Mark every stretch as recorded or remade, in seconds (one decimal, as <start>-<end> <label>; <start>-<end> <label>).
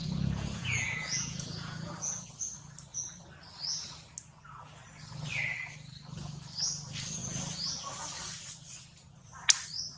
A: 0.0-2.3 remade; 2.3-10.0 recorded